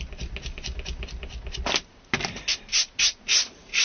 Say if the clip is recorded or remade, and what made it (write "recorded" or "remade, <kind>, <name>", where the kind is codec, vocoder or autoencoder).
recorded